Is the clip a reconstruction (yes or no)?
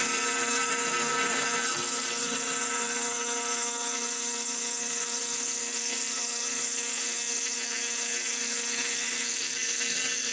yes